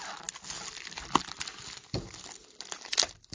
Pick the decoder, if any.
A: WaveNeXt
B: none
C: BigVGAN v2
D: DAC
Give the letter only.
B